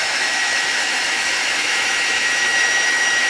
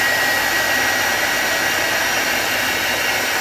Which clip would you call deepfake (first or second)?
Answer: first